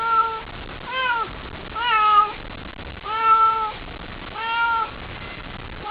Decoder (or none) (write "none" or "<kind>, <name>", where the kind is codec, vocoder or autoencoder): none